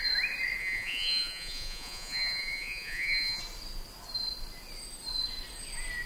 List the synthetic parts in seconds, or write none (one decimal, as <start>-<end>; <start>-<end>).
0.6-3.4